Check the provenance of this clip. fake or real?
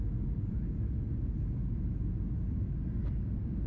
real